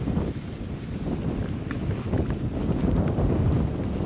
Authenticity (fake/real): real